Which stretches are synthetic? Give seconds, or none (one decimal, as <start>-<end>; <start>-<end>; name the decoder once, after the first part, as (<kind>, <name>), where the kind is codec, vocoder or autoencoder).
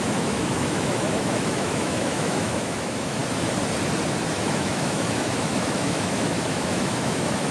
0.0-3.2 (autoencoder, DAC-VAE); 4.3-7.5